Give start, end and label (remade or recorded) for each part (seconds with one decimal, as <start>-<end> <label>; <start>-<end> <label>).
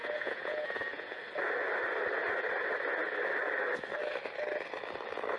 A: 0.0-1.2 remade; 1.2-5.4 recorded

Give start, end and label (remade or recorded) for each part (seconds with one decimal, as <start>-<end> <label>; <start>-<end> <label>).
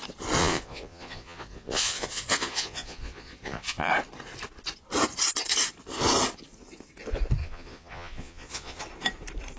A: 0.0-0.4 recorded; 0.4-3.9 remade; 3.9-7.4 recorded; 7.4-8.8 remade; 8.8-9.6 recorded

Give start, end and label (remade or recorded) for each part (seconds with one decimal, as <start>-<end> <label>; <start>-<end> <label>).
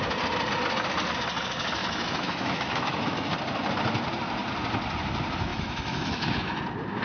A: 0.0-1.8 recorded; 1.8-3.3 remade; 3.3-5.5 recorded; 5.5-6.6 remade; 6.6-7.0 recorded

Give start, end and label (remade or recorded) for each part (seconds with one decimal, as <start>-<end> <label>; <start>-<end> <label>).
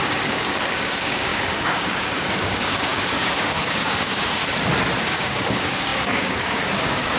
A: 0.0-4.4 remade; 4.4-5.0 recorded; 5.0-7.2 remade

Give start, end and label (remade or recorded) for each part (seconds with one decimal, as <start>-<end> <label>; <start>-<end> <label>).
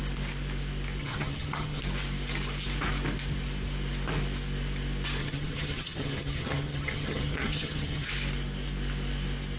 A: 0.0-1.0 recorded; 1.0-1.8 remade; 1.8-5.2 recorded; 5.2-8.1 remade; 8.1-9.6 recorded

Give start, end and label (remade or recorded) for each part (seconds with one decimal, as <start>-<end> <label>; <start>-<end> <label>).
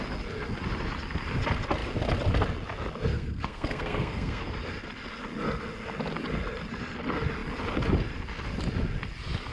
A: 0.0-3.1 recorded; 3.1-4.4 remade; 4.4-9.5 recorded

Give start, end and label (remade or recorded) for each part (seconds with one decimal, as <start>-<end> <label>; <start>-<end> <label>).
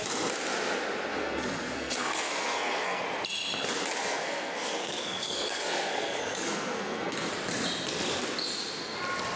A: 0.0-1.1 recorded; 1.1-3.0 remade; 3.0-4.0 recorded; 4.0-7.3 remade; 7.3-9.4 recorded